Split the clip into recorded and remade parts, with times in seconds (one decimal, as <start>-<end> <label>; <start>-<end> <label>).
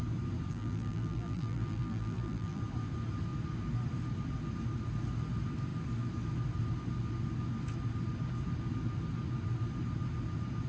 0.0-0.5 recorded; 0.5-2.6 remade; 2.6-10.7 recorded